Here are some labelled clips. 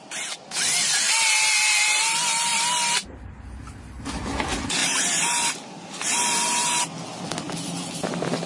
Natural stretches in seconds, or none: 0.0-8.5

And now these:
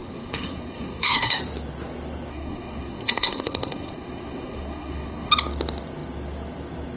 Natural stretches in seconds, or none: 1.4-2.3; 5.3-7.0

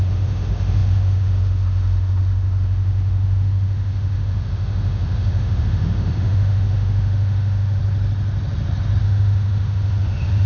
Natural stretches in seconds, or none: 7.8-9.0

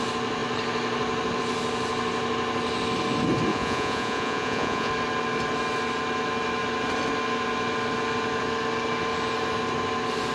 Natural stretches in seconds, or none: 0.0-3.5; 4.9-10.3

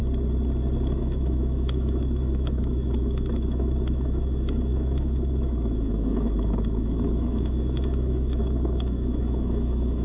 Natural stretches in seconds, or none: 0.0-1.0

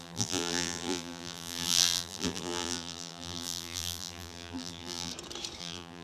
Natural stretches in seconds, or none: 5.1-5.6

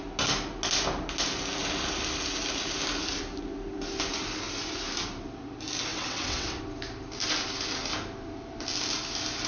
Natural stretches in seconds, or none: 0.0-5.9; 6.6-9.5